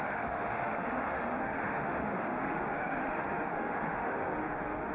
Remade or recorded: remade